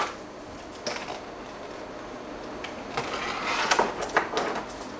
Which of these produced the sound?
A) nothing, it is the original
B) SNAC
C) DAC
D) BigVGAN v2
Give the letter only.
A